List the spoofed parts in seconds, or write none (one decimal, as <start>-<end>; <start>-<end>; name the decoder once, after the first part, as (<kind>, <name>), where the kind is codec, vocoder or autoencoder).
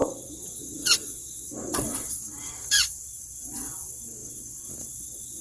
0.0-5.4 (vocoder, WaveNeXt)